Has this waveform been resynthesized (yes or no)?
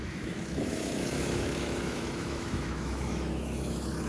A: yes